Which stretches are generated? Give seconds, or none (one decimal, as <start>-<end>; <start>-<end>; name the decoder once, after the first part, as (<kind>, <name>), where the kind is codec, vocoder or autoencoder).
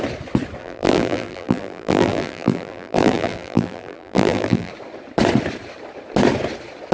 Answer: 0.6-4.7 (vocoder, BigVGAN v2)